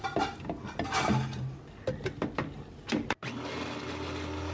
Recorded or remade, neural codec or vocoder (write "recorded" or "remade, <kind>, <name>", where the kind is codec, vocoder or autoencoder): recorded